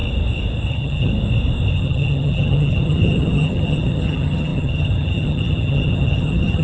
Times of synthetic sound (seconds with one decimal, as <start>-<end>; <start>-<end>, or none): 0.7-1.1; 1.7-6.6